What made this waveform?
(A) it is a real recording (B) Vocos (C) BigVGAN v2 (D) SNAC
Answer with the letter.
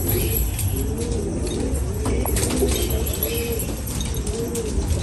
A